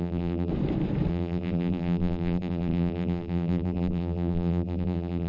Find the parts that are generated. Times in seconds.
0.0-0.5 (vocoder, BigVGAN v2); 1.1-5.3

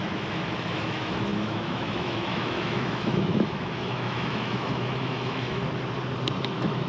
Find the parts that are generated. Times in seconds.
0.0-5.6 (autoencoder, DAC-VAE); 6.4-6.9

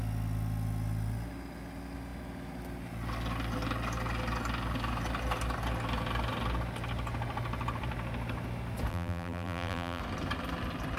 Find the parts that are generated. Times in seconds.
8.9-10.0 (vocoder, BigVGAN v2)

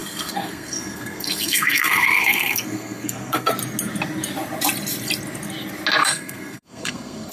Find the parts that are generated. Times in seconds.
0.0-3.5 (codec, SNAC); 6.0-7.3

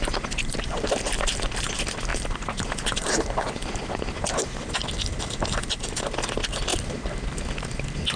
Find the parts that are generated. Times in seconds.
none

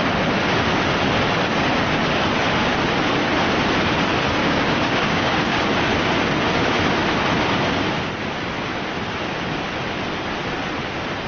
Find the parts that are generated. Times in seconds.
4.4-5.6 (codec, DAC)

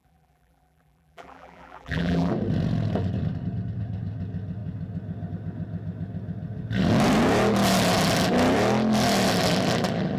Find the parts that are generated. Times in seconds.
0.0-2.3 (vocoder, BigVGAN v2)

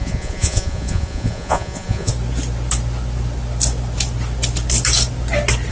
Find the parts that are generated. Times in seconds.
0.0-2.1 (vocoder, Vocos)